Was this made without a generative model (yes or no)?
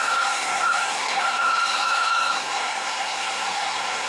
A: no